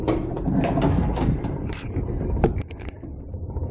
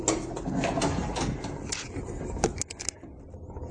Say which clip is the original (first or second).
second